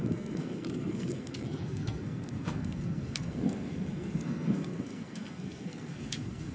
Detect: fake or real fake